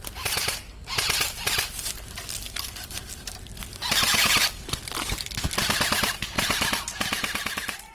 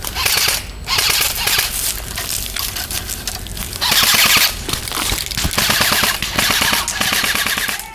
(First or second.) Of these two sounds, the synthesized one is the first